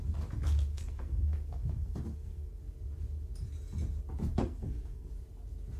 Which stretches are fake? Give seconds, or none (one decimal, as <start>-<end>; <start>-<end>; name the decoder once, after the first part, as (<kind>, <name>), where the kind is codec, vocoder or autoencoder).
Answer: 0.7-2.6 (codec, SNAC); 4.3-5.1